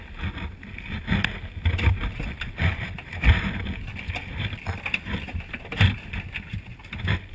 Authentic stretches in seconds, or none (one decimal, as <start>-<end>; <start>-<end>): 0.0-7.3